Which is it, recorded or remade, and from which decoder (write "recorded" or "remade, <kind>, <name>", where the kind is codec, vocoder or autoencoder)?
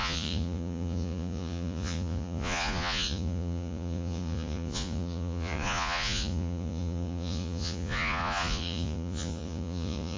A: remade, vocoder, Vocos